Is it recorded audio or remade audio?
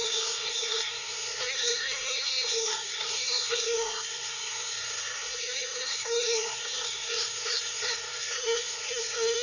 remade